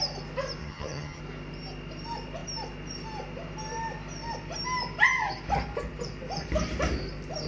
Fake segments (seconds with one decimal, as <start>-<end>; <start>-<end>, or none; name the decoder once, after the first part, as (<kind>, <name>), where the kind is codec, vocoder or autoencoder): 0.6-1.2 (vocoder, HiFi-GAN)